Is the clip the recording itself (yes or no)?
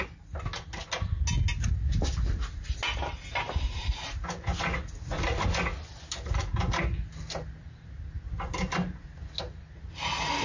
yes